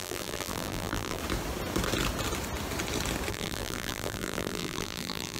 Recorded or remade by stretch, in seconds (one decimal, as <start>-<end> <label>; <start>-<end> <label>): 0.0-1.2 remade; 1.2-3.3 recorded; 3.3-5.4 remade